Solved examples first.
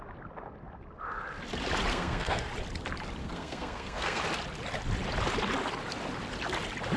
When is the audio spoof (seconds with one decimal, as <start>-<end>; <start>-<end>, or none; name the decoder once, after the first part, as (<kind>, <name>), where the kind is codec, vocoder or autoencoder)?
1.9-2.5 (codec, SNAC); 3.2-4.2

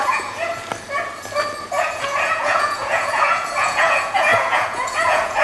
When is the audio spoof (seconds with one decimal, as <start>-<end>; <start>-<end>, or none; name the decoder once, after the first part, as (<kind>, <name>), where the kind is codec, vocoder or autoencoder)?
0.0-0.5 (vocoder, Vocos); 1.6-5.4

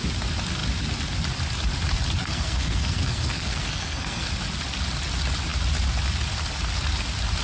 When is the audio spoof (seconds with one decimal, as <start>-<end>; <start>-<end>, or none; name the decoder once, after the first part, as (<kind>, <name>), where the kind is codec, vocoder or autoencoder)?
2.2-4.3 (codec, SNAC)

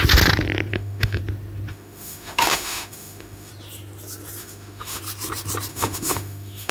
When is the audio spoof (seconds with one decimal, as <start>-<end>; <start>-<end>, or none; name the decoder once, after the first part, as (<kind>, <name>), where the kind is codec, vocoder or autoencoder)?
0.7-1.2 (autoencoder, DAC-VAE); 1.7-3.5; 4.4-5.0; 5.7-6.7

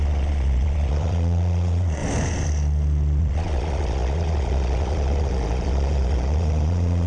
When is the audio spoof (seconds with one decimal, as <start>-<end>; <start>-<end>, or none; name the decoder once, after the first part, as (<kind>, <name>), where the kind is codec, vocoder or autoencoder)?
0.0-2.0 (vocoder, Vocos); 3.2-7.1

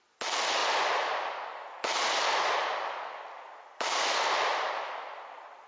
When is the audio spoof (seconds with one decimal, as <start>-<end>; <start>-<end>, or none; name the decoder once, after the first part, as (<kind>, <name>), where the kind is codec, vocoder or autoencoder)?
none